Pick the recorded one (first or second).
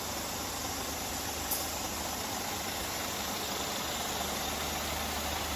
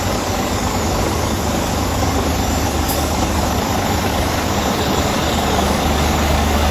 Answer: first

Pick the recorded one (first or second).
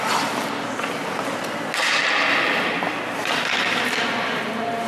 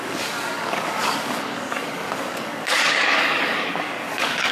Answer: first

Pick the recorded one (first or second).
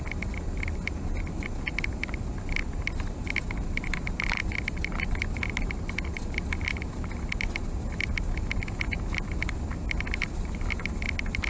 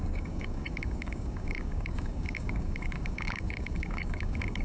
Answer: first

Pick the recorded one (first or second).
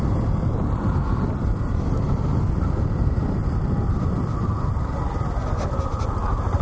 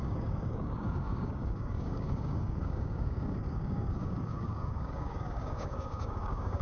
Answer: first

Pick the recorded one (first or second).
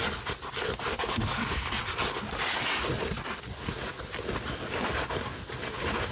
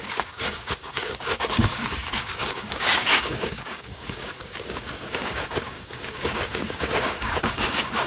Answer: first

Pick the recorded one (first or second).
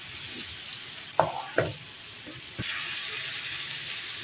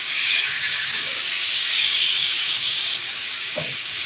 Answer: first